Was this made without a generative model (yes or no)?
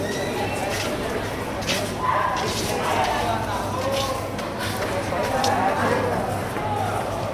yes